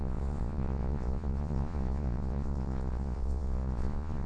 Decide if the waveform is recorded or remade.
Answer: remade